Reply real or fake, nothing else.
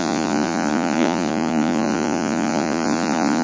fake